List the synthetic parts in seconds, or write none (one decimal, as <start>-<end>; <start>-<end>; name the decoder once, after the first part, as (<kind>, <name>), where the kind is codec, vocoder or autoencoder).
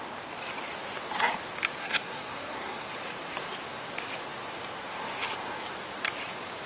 1.8-2.9 (codec, SNAC)